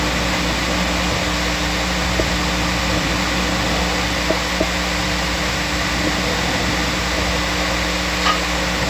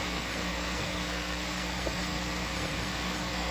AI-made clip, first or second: second